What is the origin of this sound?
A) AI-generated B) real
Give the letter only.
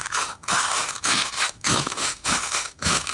A